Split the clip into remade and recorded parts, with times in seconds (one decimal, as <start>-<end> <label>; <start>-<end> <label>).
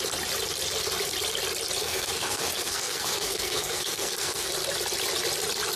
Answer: 0.0-1.8 recorded; 1.8-4.5 remade; 4.5-5.8 recorded